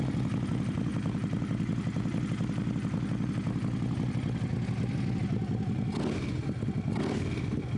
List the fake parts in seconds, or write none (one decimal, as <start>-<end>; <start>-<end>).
none